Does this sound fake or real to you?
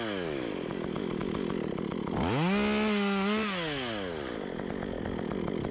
real